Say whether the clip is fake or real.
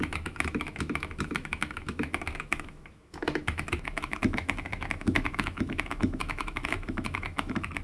fake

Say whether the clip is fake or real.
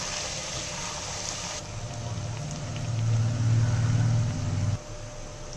real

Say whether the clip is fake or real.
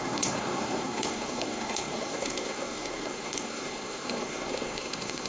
fake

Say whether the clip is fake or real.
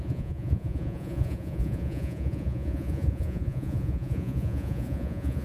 fake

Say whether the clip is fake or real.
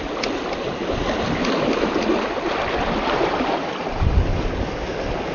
real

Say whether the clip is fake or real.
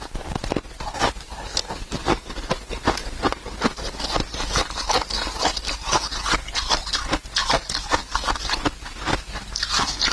real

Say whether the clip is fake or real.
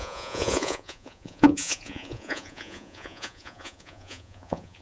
fake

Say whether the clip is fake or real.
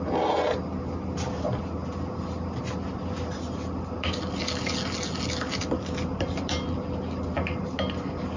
real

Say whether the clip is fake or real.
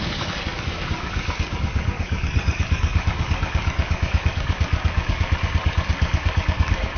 fake